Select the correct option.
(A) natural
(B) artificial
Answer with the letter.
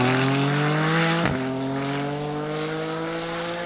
A